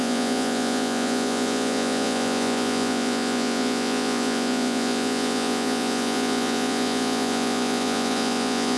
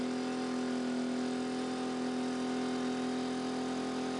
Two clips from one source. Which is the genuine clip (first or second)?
second